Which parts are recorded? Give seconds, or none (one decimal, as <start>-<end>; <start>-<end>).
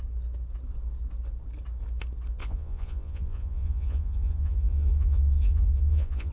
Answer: 0.0-2.4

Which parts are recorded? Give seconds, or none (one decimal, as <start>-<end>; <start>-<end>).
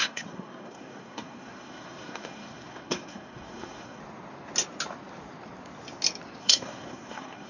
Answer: 4.0-6.4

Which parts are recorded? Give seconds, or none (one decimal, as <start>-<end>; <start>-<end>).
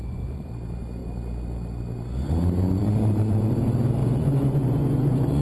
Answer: 0.5-2.8; 3.6-4.0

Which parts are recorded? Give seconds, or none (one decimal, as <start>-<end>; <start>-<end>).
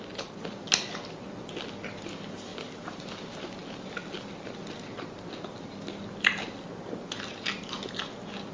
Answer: 0.0-2.5; 3.0-8.5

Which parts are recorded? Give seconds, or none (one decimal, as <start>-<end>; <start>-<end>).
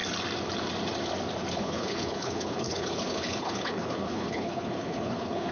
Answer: 0.0-1.5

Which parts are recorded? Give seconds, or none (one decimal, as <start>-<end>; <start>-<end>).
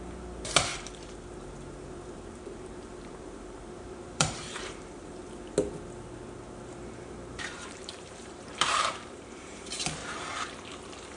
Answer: 5.2-6.7; 10.0-11.2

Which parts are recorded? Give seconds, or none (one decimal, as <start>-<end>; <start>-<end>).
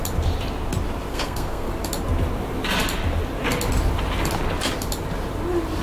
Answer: 0.0-1.1; 1.7-5.8